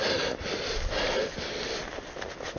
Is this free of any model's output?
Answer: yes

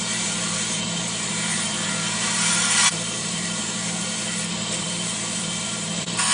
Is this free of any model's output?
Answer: no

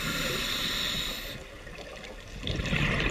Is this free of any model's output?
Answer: yes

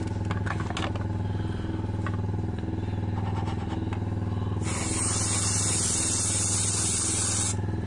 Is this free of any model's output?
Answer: yes